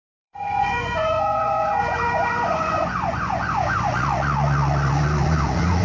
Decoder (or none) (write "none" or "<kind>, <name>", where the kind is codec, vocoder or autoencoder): vocoder, Vocos